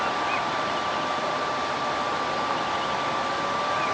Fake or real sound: real